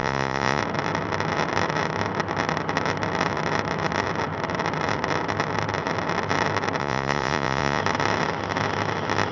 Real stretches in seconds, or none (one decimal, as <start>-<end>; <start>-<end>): 0.6-6.8; 7.8-9.3